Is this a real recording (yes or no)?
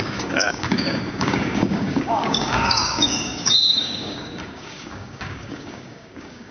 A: no